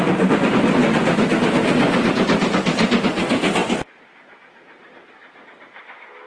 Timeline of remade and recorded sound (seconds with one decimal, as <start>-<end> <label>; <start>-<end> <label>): 0.0-6.3 recorded